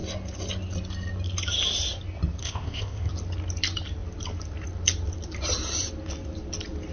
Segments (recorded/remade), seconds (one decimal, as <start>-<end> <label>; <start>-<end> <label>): 0.0-2.4 recorded; 2.4-3.1 remade; 3.1-6.9 recorded